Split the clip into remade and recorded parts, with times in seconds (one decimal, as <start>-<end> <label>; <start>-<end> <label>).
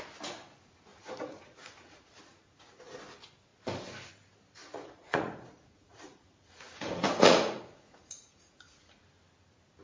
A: 0.0-0.9 recorded; 0.9-3.0 remade; 3.0-4.6 recorded; 4.6-9.0 remade; 9.0-9.8 recorded